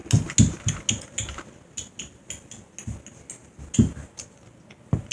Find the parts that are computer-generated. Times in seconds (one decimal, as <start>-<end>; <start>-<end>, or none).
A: none